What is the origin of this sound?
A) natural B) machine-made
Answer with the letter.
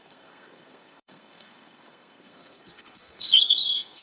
B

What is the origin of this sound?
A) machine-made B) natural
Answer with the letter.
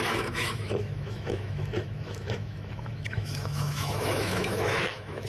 A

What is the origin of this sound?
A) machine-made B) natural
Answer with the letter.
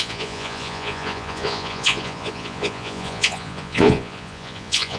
A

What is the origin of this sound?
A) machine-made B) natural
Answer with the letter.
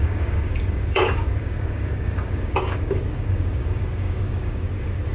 A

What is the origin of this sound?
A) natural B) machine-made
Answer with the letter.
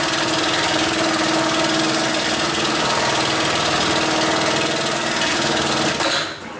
A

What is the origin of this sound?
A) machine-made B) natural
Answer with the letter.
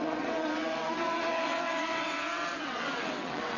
A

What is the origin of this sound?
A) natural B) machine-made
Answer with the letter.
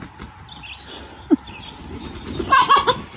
A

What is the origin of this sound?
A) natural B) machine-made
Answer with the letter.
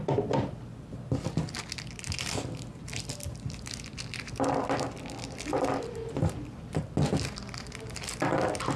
A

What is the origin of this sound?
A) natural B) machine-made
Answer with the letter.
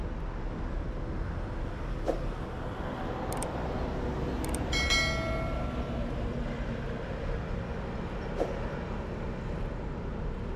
A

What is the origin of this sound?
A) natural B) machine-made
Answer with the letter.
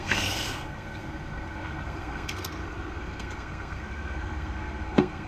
B